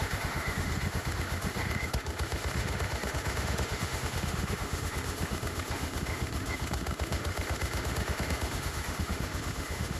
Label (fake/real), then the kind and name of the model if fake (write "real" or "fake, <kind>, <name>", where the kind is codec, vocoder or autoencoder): fake, autoencoder, DAC-VAE